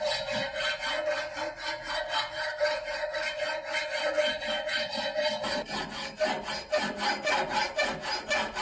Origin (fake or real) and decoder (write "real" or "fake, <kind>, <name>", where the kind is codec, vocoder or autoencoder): real